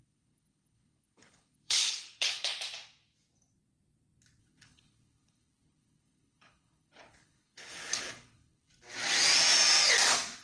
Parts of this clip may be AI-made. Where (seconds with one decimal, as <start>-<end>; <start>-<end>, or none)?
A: 0.0-2.5; 4.4-8.7